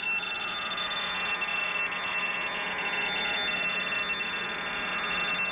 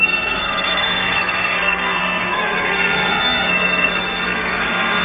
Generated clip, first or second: second